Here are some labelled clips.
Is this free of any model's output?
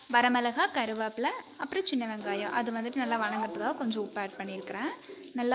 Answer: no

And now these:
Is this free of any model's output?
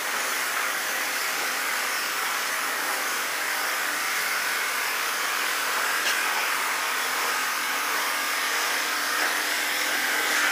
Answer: no